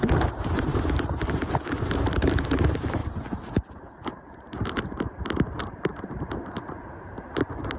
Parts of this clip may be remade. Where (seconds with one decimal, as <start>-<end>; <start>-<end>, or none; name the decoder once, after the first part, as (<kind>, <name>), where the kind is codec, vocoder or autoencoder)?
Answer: 0.0-7.8 (vocoder, BigVGAN v2)